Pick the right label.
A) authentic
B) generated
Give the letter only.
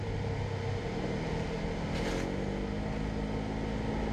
A